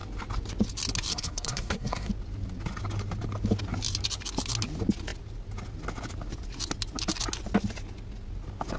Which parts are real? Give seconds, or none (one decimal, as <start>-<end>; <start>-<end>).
0.0-1.1; 2.1-8.8